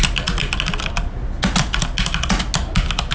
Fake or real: real